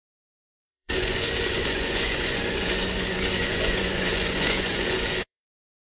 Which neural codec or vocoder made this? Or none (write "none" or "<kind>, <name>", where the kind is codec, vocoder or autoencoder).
vocoder, Vocos